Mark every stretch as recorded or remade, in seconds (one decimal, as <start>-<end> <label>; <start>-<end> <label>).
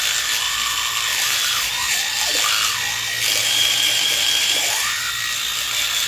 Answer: 0.0-1.1 recorded; 1.1-2.3 remade; 2.3-3.4 recorded; 3.4-5.0 remade; 5.0-6.1 recorded